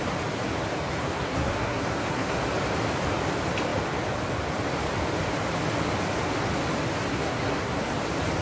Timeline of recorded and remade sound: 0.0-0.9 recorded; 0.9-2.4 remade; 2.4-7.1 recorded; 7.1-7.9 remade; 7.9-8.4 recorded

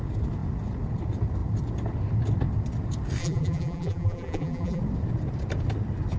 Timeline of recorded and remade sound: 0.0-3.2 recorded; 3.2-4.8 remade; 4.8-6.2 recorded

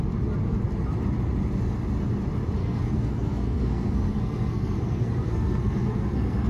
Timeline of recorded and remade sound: 0.0-2.6 recorded; 2.6-6.5 remade

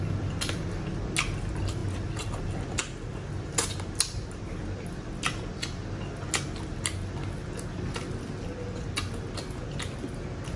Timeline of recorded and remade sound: 0.0-10.6 recorded

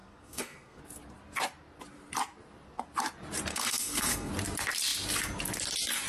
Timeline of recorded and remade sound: 0.0-0.8 remade; 0.8-3.5 recorded; 3.5-4.3 remade; 4.3-6.1 recorded